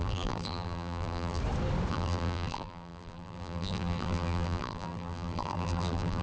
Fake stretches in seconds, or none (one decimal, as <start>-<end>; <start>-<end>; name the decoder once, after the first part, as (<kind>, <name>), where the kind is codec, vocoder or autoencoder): 0.0-1.4 (vocoder, BigVGAN v2); 1.9-6.2